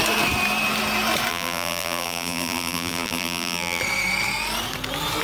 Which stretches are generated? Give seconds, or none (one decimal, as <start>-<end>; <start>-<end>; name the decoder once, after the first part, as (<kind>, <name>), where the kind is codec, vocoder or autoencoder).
1.3-3.8 (vocoder, BigVGAN v2)